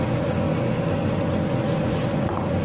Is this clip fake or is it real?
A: real